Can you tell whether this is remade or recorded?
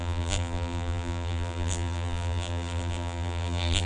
remade